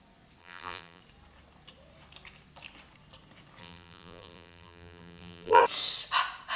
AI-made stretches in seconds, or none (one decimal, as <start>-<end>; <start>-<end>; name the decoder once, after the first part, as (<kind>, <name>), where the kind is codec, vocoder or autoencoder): 0.4-1.0 (vocoder, BigVGAN v2); 3.6-5.6